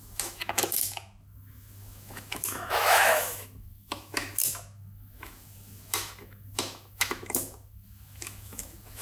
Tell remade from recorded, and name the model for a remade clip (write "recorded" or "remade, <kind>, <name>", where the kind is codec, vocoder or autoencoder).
remade, autoencoder, DAC-VAE